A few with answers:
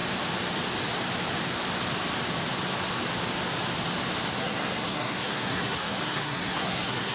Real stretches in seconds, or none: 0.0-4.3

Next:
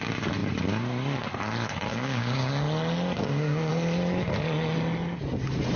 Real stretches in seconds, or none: 0.0-1.9; 2.5-3.2; 3.7-5.8